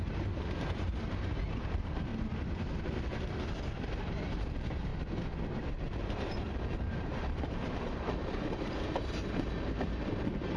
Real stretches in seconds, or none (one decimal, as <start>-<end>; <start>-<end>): 2.1-3.9; 4.9-5.7